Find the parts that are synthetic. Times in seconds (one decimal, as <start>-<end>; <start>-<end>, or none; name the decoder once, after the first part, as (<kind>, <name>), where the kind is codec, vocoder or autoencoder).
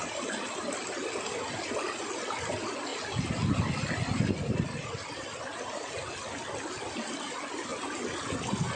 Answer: none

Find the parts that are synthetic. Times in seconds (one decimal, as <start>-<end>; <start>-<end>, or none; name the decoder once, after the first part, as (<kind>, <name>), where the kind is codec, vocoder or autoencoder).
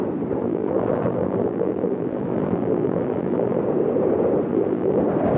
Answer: 0.4-3.6 (vocoder, BigVGAN v2); 4.5-5.0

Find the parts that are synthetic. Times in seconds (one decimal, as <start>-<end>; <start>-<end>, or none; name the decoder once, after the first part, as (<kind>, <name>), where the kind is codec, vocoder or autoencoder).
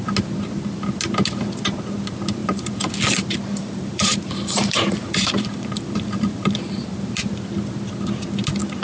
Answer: 2.4-2.9 (vocoder, BigVGAN v2); 3.6-7.1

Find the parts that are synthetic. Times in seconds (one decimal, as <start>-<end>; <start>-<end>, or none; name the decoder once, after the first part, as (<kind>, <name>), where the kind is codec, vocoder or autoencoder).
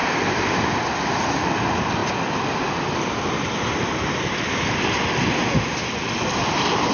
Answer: 0.0-0.6 (vocoder, BigVGAN v2)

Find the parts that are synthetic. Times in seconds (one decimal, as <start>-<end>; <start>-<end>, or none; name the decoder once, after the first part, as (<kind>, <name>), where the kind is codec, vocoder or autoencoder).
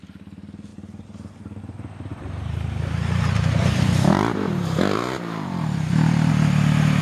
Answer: 0.7-1.6 (vocoder, BigVGAN v2); 2.1-6.3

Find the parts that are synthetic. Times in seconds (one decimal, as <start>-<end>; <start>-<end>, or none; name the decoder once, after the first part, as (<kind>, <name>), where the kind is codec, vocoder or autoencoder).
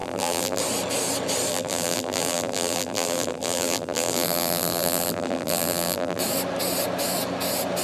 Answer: 0.0-0.6 (vocoder, BigVGAN v2); 1.5-6.2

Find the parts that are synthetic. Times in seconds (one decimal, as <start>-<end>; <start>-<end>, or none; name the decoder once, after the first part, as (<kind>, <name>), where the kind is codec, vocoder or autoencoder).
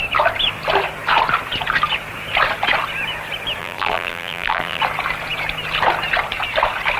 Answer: 3.6-4.8 (vocoder, BigVGAN v2)